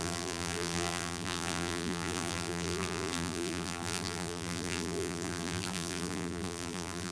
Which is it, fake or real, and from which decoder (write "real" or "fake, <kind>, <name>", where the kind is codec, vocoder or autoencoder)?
fake, vocoder, BigVGAN v2